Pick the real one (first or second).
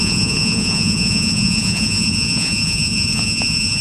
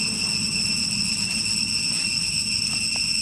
second